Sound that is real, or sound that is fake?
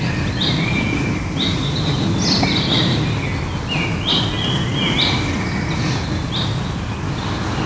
real